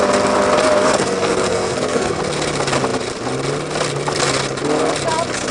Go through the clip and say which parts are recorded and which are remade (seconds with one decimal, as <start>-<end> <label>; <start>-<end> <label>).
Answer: 0.0-0.8 recorded; 0.8-2.2 remade; 2.2-5.5 recorded